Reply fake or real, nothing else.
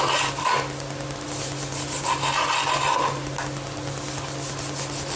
real